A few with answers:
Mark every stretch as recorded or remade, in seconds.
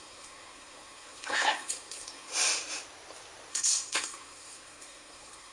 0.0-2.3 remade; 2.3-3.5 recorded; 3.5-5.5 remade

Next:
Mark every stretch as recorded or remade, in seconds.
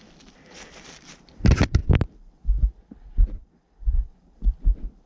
0.0-5.1 recorded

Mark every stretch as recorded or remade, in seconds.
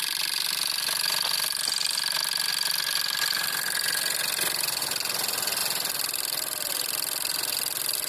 0.0-5.6 recorded; 5.6-6.7 remade; 6.7-8.1 recorded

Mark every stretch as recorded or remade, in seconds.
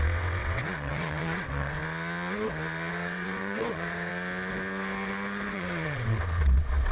0.0-1.8 remade; 1.8-2.9 recorded; 2.9-4.1 remade; 4.1-5.5 recorded; 5.5-6.9 remade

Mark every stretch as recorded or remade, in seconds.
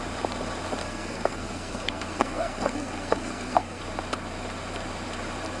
0.0-0.8 recorded; 0.8-3.8 remade; 3.8-5.6 recorded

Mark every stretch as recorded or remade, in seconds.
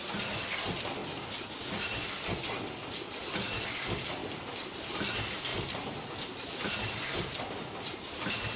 0.0-5.5 recorded; 5.5-8.2 remade; 8.2-8.6 recorded